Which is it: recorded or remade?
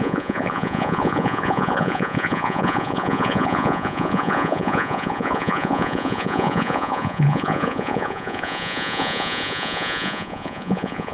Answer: remade